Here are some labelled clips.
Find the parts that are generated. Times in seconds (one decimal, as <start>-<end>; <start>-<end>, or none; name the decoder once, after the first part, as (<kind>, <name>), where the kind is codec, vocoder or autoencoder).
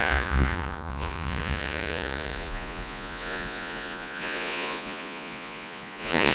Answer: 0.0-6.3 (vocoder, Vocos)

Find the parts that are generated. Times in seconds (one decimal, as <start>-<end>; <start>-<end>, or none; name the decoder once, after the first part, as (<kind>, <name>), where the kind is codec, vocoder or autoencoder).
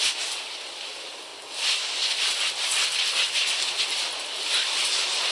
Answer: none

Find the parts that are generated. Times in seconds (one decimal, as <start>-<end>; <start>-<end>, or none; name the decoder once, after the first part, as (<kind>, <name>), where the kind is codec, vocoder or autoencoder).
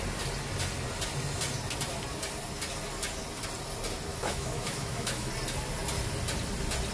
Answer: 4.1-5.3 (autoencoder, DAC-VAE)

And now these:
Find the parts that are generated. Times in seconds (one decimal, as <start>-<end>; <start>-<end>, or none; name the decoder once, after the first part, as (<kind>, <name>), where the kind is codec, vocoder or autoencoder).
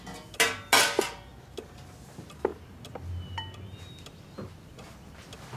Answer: none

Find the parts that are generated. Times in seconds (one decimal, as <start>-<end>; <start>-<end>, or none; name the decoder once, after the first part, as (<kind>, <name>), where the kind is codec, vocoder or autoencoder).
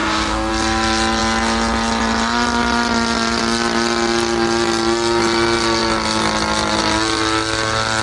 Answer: 0.0-0.5 (codec, SNAC)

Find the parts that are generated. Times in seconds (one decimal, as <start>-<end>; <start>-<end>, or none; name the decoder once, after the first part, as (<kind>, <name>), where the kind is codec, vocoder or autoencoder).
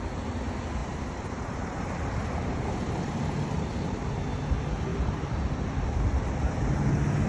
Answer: 0.8-4.1 (vocoder, BigVGAN v2); 4.9-5.5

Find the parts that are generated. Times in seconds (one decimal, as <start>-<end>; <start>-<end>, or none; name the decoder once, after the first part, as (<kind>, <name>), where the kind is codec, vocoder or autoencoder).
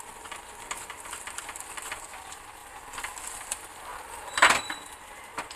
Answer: 0.0-2.6 (vocoder, BigVGAN v2); 3.2-3.9; 4.5-5.6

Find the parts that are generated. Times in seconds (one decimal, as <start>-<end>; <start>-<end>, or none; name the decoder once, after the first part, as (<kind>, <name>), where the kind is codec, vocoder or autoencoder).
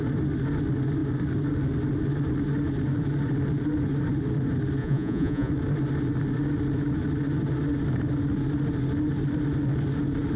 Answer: 4.8-5.5 (vocoder, Vocos)